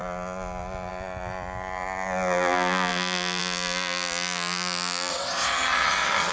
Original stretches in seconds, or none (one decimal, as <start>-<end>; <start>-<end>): 0.0-5.1